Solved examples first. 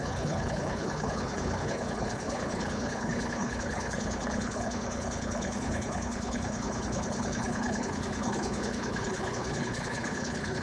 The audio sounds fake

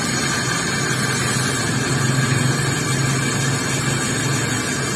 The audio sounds real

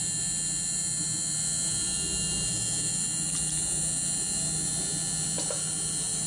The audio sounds real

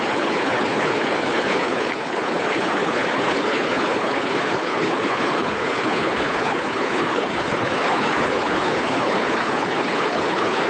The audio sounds fake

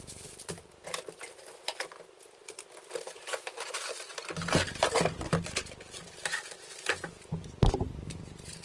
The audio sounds real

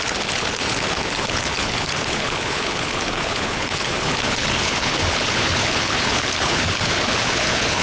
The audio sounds fake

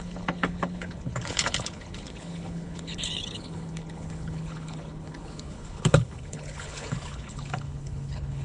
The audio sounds fake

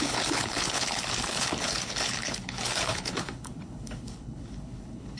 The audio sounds fake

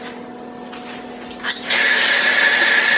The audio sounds real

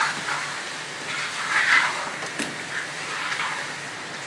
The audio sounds real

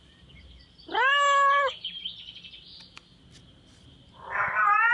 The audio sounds real